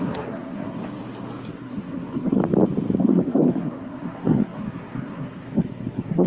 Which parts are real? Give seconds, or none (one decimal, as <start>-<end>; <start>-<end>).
0.8-1.5; 2.4-3.0